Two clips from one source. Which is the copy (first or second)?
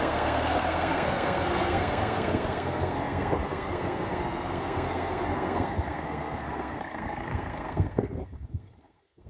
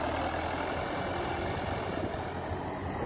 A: first